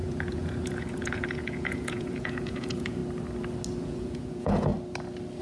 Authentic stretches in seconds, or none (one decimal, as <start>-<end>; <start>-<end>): 3.0-3.8; 4.7-5.4